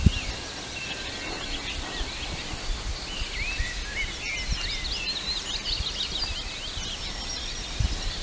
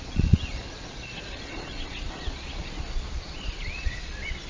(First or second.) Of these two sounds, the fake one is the second